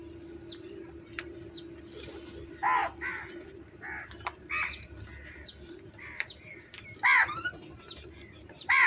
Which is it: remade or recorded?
recorded